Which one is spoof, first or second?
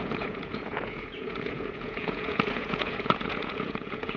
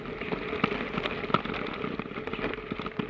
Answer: first